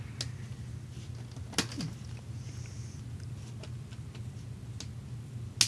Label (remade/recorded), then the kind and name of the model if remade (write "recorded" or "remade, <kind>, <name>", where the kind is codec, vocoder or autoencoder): recorded